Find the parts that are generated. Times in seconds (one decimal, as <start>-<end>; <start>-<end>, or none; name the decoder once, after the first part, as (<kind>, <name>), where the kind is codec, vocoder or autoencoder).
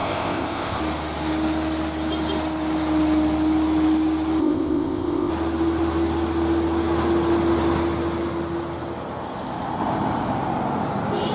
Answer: 0.0-0.8 (codec, ZipCodec); 4.4-5.3